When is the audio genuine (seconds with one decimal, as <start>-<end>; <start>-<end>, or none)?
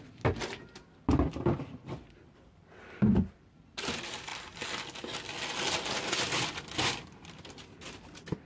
0.0-8.5